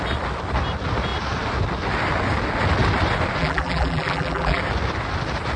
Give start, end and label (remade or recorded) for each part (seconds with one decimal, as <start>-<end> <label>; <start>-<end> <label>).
0.0-3.4 recorded; 3.4-4.6 remade; 4.6-5.6 recorded